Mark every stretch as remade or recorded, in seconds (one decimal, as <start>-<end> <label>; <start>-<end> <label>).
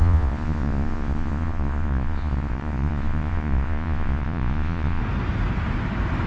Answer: 0.0-5.0 remade; 5.0-6.3 recorded